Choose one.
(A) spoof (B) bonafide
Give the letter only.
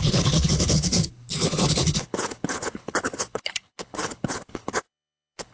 A